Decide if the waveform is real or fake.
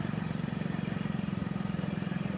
fake